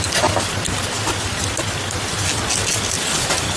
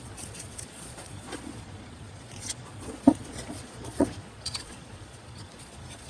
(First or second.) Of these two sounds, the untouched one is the first